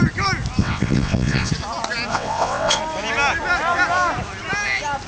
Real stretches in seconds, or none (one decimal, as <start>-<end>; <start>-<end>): 0.0-0.6; 1.5-2.1; 2.8-5.1